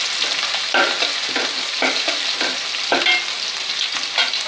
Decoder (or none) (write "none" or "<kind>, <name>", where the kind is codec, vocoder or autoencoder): none